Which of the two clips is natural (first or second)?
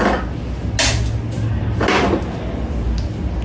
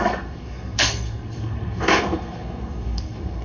first